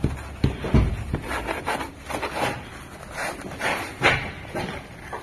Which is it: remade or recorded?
recorded